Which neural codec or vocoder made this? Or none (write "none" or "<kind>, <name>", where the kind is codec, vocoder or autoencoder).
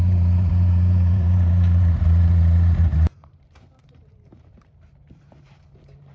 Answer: vocoder, BigVGAN v2